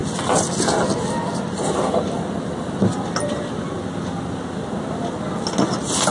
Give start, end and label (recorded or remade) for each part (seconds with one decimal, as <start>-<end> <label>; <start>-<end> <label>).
0.0-6.1 recorded